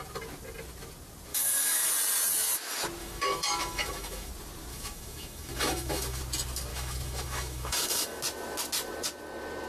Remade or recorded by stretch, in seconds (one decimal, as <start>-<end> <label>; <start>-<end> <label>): 0.0-1.3 recorded; 1.3-1.9 remade; 1.9-3.0 recorded; 3.0-4.3 remade; 4.3-4.7 recorded; 4.7-6.2 remade; 6.2-6.7 recorded; 6.7-8.2 remade; 8.2-9.7 recorded